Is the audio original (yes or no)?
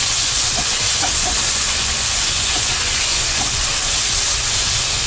no